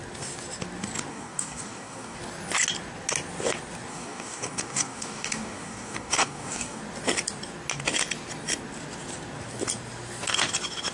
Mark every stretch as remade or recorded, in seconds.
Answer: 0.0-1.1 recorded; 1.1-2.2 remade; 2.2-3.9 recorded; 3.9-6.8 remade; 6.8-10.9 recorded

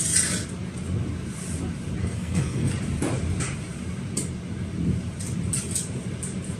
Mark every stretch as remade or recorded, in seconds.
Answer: 0.0-2.0 recorded; 2.0-2.7 remade; 2.7-6.6 recorded

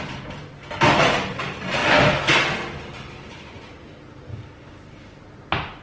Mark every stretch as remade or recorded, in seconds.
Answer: 0.0-4.3 recorded; 4.3-5.2 remade; 5.2-5.8 recorded